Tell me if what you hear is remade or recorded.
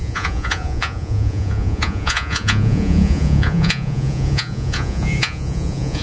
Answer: remade